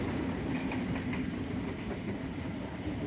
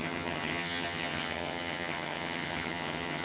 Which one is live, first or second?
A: first